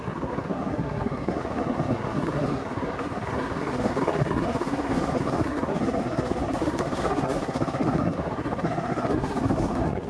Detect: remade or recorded remade